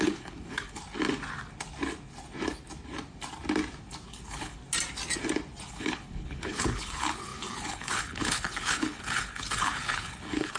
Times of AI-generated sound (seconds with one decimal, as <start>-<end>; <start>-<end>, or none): 0.0-0.8; 4.1-4.6; 5.7-10.6

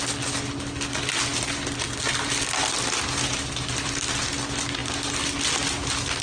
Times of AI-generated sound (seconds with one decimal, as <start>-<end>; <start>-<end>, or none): none

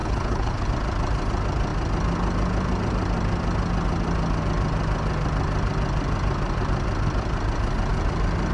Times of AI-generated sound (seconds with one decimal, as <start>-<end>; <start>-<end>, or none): 0.0-0.7